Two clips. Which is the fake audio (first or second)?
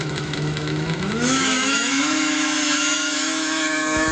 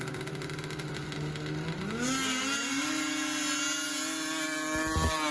first